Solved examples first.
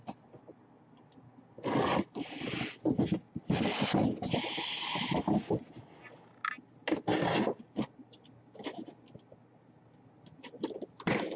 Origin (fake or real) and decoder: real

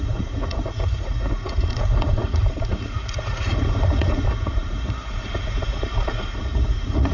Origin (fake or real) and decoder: fake, vocoder, Vocos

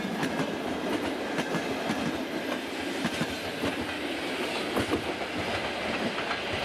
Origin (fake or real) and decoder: real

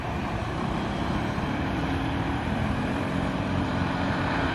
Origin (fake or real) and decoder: fake, vocoder, BigVGAN v2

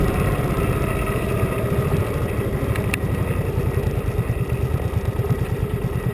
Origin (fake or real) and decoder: real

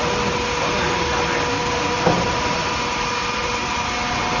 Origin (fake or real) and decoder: real